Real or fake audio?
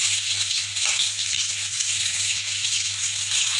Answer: fake